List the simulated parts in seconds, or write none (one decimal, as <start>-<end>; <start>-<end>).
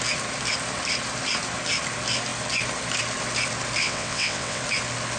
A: 3.8-4.6